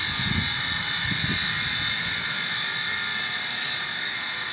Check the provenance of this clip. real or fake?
real